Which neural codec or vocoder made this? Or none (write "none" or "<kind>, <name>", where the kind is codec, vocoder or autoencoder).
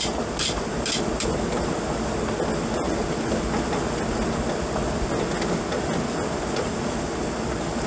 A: none